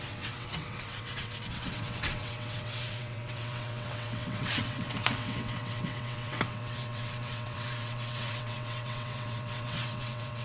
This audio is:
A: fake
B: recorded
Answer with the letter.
A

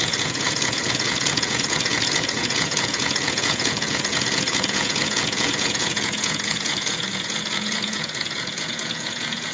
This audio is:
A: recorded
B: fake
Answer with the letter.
B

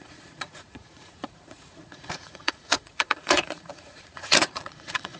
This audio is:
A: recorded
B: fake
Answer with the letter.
B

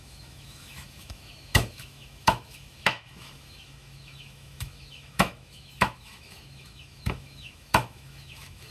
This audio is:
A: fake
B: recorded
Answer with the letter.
A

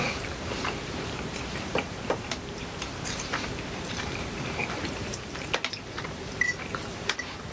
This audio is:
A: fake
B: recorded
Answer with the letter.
A